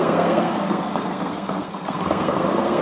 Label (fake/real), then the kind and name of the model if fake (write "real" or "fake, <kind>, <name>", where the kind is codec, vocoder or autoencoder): fake, codec, SNAC